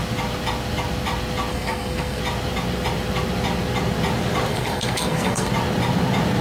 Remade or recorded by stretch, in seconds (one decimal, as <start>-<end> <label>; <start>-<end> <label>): 0.0-1.5 recorded; 1.5-2.2 remade; 2.2-4.5 recorded; 4.5-5.5 remade; 5.5-6.4 recorded